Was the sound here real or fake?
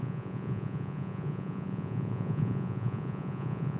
fake